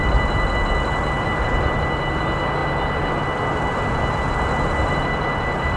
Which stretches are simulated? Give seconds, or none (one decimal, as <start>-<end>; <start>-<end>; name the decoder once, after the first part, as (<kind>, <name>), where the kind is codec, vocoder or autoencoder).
none